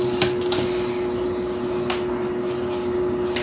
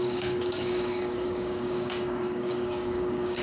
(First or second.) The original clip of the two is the first